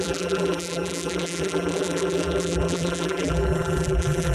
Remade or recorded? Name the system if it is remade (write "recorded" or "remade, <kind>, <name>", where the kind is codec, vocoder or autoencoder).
remade, vocoder, BigVGAN v2